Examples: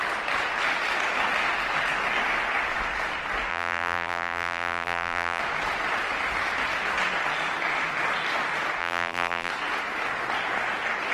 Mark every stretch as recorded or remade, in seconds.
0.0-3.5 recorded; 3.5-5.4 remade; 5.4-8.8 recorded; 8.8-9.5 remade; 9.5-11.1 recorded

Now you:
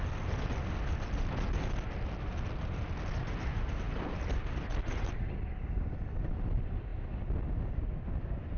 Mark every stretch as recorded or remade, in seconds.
0.0-8.6 recorded

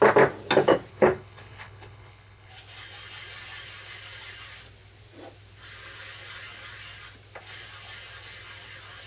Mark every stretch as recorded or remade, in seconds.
0.0-0.9 recorded; 0.9-2.5 remade; 2.5-9.1 recorded

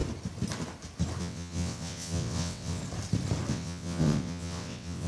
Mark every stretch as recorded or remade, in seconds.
0.0-1.2 recorded; 1.2-2.8 remade; 2.8-3.5 recorded; 3.5-5.1 remade

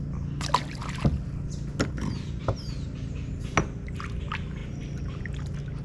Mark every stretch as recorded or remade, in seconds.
0.0-5.8 recorded

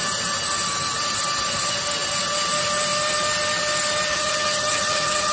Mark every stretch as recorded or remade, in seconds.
0.0-4.1 recorded; 4.1-5.3 remade